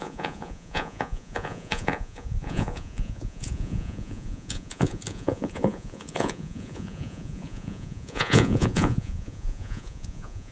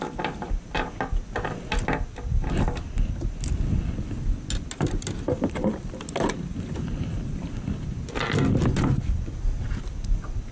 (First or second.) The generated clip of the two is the first